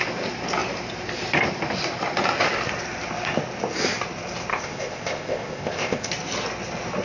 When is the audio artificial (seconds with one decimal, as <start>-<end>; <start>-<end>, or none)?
4.5-6.1

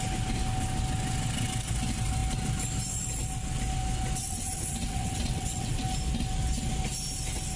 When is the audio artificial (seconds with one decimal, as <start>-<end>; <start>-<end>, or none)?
4.2-5.8